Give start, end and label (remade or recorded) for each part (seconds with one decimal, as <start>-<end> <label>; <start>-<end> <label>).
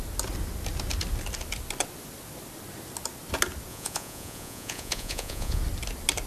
0.0-3.7 recorded; 3.7-5.6 remade; 5.6-6.3 recorded